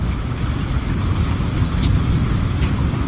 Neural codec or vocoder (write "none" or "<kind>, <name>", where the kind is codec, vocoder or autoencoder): none